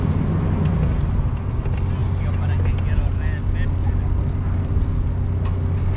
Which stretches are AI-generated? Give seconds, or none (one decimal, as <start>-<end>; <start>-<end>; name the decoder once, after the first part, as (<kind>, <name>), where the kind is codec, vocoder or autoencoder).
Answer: none